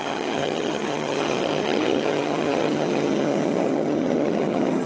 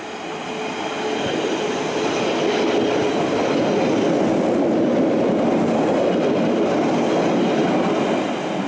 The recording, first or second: second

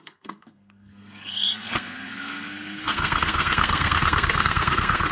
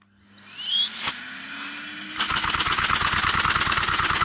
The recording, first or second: second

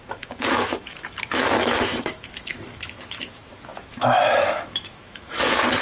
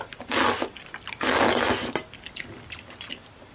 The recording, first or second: second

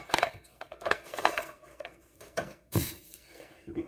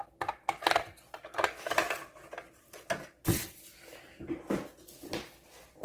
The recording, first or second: second